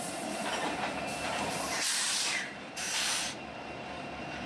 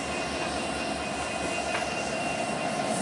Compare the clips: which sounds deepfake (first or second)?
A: first